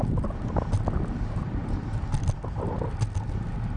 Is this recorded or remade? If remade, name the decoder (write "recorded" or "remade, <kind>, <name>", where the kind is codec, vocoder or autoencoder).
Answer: recorded